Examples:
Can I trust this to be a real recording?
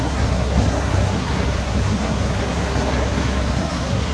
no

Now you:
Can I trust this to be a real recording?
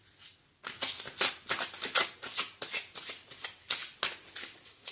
yes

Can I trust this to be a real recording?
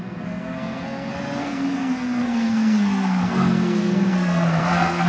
no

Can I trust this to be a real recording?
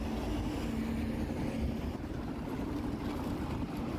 yes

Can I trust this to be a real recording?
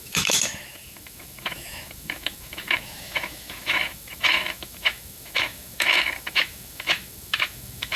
no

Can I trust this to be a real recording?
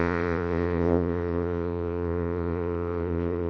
no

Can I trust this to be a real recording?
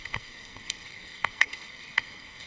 no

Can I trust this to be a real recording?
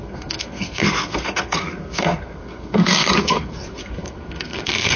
no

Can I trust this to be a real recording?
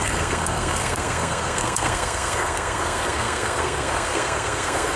no